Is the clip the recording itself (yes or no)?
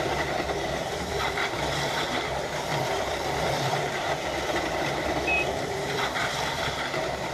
no